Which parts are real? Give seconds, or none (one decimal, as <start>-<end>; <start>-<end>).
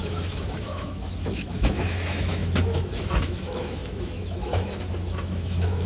none